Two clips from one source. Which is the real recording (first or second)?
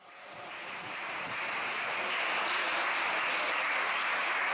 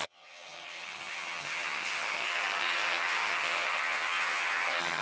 first